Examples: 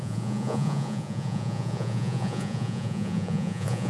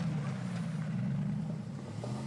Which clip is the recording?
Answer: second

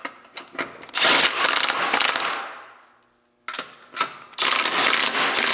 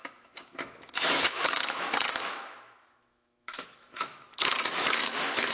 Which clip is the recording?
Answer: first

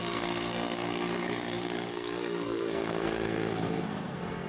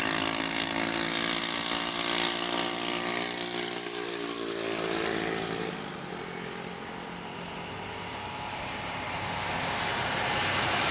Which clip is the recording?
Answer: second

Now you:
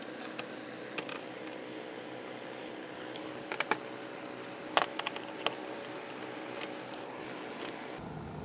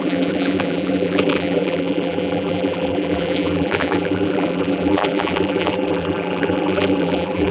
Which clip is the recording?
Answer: first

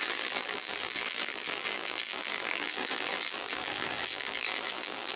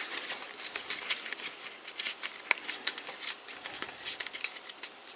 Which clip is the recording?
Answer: second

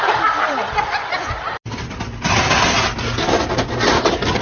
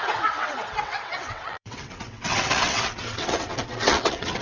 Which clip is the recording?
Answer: first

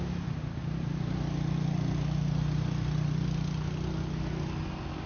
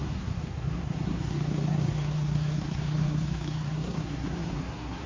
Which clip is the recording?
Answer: first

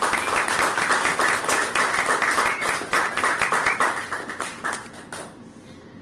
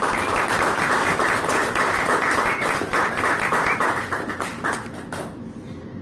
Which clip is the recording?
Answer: first